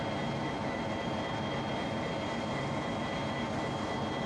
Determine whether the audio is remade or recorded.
recorded